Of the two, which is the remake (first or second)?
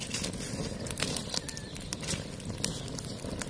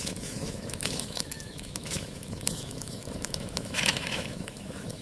second